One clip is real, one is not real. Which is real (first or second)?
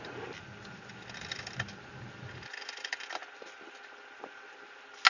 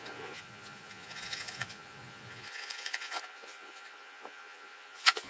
first